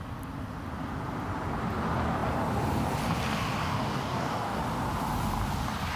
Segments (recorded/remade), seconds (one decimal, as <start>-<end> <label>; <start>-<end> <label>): 0.0-3.6 recorded; 3.6-4.6 remade; 4.6-6.0 recorded